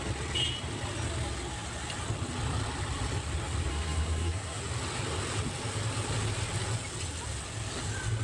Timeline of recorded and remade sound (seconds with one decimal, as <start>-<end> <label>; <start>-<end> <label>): 0.0-3.7 recorded; 3.7-4.6 remade; 4.6-8.2 recorded